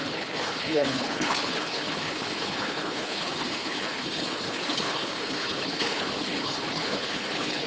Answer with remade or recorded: remade